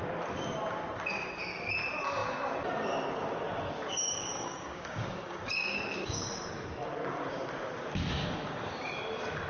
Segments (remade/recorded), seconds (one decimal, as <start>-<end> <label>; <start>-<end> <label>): 0.0-3.9 recorded; 3.9-6.3 remade; 6.3-8.2 recorded; 8.2-9.0 remade; 9.0-9.5 recorded